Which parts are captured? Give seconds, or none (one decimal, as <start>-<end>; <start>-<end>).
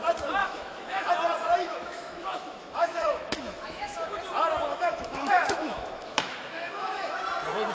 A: 0.0-0.4; 1.1-1.6; 4.2-4.7; 7.2-7.7